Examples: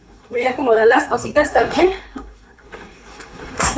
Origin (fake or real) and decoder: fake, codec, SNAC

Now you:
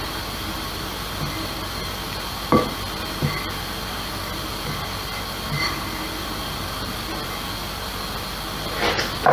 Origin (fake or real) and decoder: real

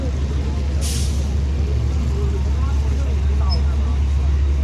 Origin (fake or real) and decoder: real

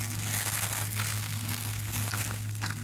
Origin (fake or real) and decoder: fake, codec, SNAC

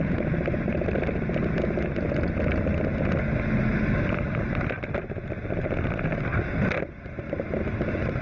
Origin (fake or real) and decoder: real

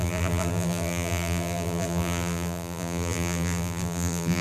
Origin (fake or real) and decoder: fake, vocoder, BigVGAN v2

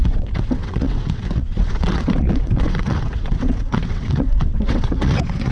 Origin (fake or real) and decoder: fake, vocoder, WaveNeXt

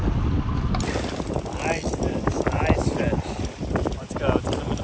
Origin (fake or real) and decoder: real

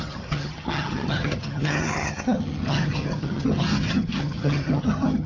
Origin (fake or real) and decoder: fake, vocoder, HiFi-GAN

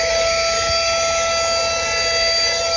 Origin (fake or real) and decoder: real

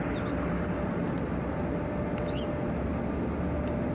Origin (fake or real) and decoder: real